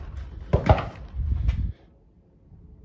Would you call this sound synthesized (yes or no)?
no